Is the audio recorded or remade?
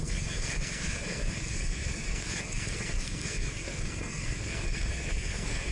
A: remade